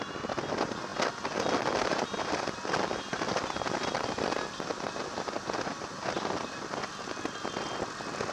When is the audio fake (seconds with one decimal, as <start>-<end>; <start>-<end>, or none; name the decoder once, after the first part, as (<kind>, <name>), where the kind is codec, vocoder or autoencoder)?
none